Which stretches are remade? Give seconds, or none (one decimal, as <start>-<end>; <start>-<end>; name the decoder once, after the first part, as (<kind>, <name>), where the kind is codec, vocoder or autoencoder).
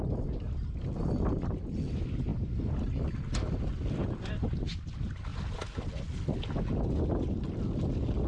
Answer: none